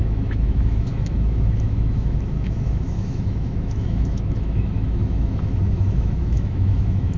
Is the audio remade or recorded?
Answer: remade